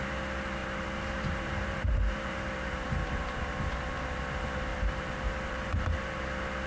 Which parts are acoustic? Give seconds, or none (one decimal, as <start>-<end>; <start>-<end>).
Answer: 0.0-0.6; 4.2-4.7; 6.2-6.7